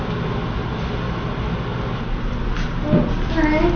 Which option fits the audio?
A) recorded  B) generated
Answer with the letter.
A